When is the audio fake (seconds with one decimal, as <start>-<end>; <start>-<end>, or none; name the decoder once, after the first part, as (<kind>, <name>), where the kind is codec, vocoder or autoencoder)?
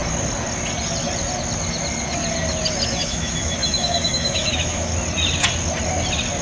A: 2.9-4.9 (autoencoder, DAC-VAE)